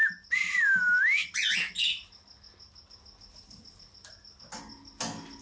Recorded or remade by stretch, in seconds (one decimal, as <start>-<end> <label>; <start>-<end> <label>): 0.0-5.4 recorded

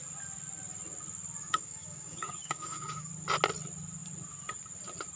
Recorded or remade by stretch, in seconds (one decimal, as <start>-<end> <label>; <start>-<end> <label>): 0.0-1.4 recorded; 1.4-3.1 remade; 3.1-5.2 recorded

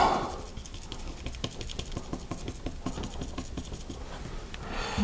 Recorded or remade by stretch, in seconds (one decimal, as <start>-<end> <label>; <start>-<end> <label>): 0.0-0.5 recorded; 0.5-1.2 remade; 1.2-5.0 recorded